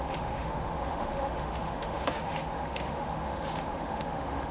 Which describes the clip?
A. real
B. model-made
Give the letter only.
B